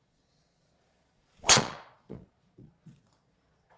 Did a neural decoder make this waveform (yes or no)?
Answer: yes